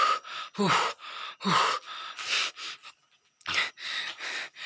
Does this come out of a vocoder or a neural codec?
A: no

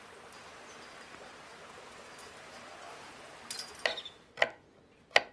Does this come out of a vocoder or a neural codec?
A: no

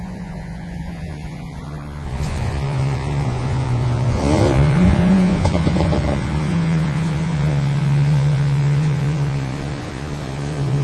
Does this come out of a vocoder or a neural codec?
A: yes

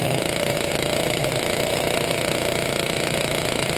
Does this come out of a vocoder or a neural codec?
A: yes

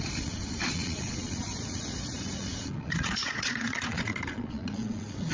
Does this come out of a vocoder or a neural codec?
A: yes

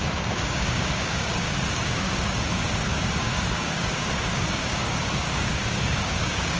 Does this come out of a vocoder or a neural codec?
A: yes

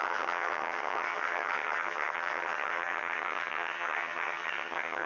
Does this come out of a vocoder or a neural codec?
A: yes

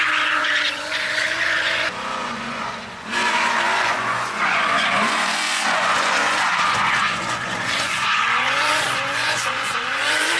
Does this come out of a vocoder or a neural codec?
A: yes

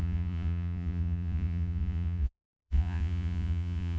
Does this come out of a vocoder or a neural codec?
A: yes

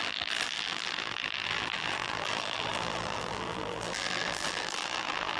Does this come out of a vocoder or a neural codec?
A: yes